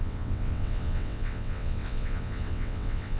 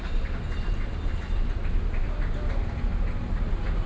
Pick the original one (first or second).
second